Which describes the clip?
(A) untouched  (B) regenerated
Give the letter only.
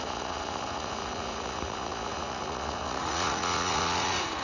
B